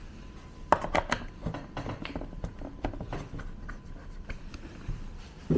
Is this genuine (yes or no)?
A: yes